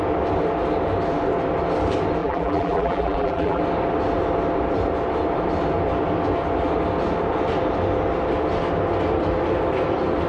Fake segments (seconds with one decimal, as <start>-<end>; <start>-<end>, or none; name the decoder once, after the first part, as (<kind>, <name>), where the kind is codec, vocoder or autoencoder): 2.2-3.6 (vocoder, BigVGAN v2)